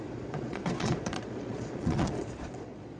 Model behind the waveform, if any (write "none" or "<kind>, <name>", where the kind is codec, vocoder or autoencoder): vocoder, Vocos